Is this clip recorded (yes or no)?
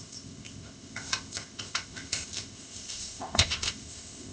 no